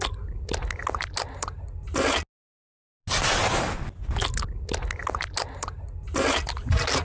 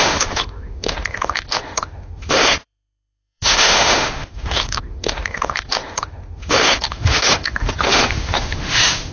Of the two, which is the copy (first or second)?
second